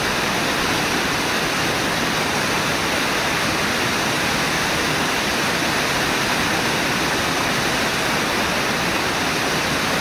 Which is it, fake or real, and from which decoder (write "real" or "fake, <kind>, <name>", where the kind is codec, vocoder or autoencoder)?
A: real